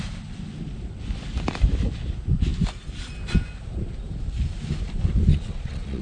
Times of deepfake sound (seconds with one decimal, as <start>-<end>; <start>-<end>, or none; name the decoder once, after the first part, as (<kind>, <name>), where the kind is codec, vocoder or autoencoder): 5.3-6.0 (vocoder, Vocos)